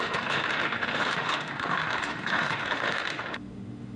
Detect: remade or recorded remade